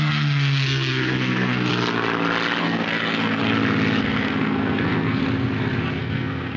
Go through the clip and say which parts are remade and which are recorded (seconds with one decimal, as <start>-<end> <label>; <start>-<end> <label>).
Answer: 0.0-1.7 remade; 1.7-2.6 recorded; 2.6-3.4 remade; 3.4-4.0 recorded; 4.0-5.2 remade; 5.2-6.0 recorded; 6.0-6.6 remade